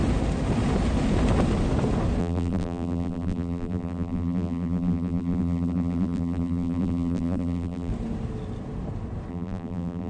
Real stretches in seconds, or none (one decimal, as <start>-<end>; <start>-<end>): 0.0-2.2; 7.9-9.3

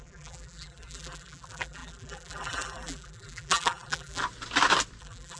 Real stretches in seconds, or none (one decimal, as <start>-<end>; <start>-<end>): 4.2-5.0

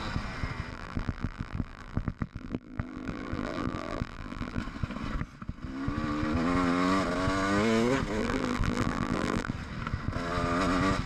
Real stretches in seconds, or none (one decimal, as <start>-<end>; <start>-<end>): 0.0-0.7; 4.6-8.2; 9.5-11.1

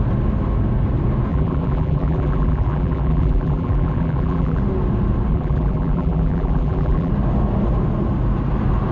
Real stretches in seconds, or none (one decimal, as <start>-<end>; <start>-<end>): 0.0-1.3; 4.6-5.3; 7.1-8.9

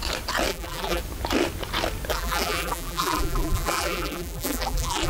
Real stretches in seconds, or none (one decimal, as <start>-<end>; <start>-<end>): 0.0-0.5; 1.0-2.1

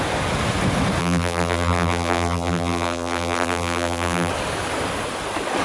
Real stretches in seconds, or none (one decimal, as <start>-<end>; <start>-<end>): 0.0-1.0; 4.3-5.6

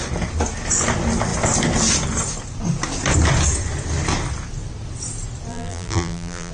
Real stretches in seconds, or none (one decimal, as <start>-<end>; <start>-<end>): 0.0-5.5

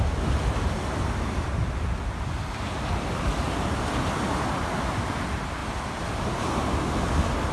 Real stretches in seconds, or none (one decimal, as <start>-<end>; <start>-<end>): 0.0-5.6; 6.5-7.5